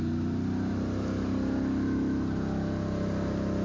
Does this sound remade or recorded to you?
recorded